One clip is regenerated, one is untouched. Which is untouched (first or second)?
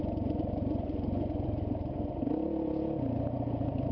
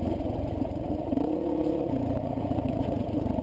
first